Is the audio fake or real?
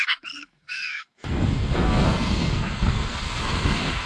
fake